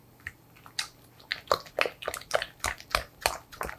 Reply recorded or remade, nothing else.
recorded